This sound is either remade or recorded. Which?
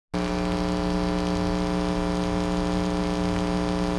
recorded